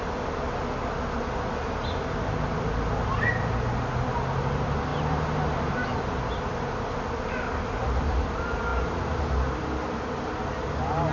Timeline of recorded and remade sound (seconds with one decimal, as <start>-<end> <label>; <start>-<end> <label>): 0.0-11.1 recorded